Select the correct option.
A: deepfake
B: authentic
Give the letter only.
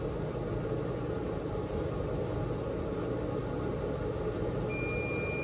B